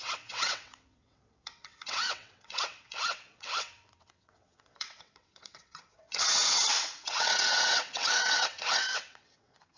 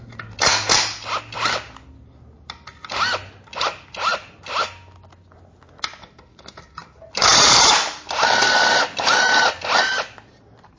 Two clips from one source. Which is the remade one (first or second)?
first